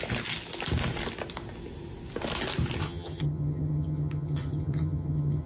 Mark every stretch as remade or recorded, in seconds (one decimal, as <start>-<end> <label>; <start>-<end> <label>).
0.0-2.8 recorded; 2.8-5.5 remade